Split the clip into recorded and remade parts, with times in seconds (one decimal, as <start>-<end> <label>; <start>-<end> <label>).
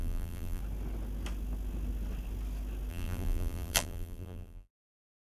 0.0-0.6 remade; 0.6-2.9 recorded; 2.9-5.3 remade